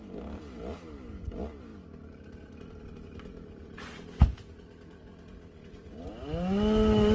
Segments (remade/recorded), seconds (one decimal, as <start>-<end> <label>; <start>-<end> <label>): 0.0-7.1 recorded